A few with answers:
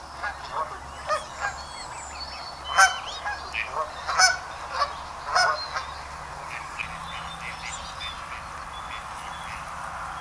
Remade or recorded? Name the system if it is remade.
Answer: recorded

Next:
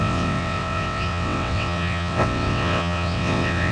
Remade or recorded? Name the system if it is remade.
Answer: remade, vocoder, WaveNeXt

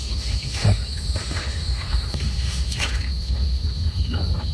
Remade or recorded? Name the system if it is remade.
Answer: remade, autoencoder, DAC-VAE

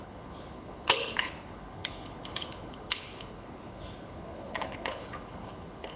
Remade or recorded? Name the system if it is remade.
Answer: remade, codec, HILCodec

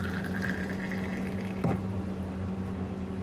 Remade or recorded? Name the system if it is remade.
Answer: recorded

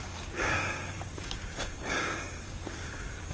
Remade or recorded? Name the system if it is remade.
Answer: remade, codec, DAC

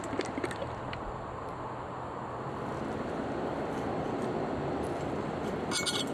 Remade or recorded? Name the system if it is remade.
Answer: recorded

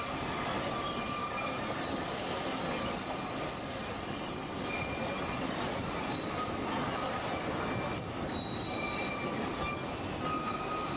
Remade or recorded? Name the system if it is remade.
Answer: recorded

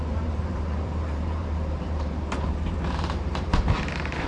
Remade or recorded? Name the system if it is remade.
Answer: remade, vocoder, BigVGAN v2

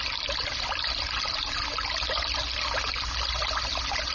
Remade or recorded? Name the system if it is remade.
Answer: recorded